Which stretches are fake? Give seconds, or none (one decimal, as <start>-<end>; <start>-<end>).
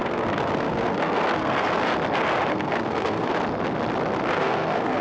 0.0-1.8; 2.5-3.3; 4.3-5.0